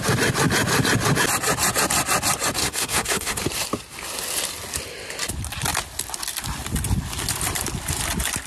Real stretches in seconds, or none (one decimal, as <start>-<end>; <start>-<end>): 0.0-2.6; 3.4-8.5